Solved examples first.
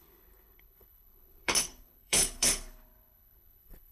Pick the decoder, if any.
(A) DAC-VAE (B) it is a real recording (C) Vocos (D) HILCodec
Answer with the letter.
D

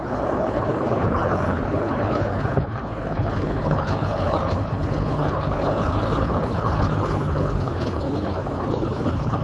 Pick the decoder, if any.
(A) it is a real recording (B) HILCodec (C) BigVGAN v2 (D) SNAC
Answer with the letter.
B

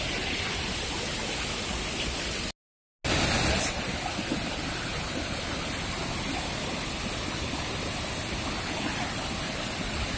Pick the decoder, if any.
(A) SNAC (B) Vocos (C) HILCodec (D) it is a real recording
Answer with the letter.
D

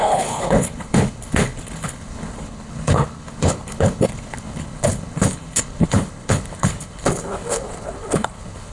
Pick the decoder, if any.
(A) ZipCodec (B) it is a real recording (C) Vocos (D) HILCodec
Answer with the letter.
D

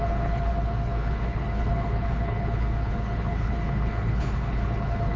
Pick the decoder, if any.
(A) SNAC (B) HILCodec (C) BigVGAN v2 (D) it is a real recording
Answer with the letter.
B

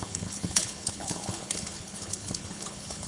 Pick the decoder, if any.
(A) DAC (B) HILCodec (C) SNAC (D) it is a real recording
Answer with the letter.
B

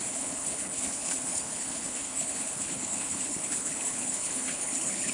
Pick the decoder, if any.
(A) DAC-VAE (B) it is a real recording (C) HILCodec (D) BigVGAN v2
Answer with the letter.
C